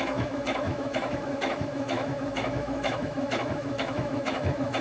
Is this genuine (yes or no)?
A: no